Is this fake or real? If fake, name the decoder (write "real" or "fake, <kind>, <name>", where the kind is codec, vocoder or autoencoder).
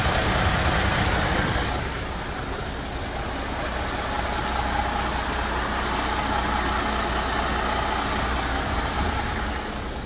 real